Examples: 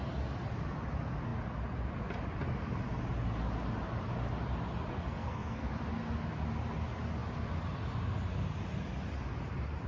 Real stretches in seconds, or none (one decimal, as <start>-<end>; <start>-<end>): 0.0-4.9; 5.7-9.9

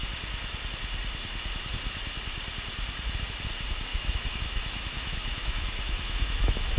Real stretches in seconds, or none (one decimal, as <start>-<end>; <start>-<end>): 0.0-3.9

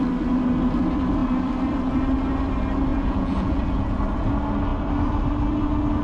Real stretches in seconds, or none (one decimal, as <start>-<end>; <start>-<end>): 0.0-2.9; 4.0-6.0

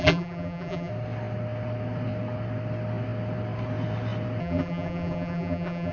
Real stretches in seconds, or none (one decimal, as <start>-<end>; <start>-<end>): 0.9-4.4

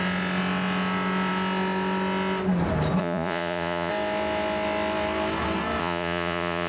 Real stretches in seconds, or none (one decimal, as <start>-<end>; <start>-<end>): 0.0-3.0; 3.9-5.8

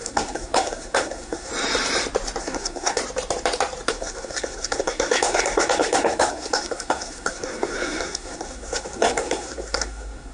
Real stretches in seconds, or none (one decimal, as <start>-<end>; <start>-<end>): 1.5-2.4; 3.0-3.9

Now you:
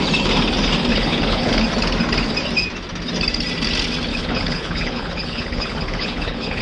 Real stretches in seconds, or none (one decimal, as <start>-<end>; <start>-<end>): 0.0-0.9; 1.6-4.1